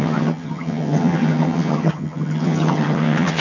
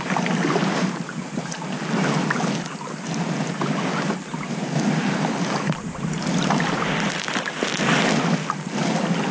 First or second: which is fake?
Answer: first